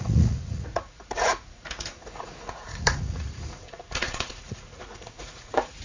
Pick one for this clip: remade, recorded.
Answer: remade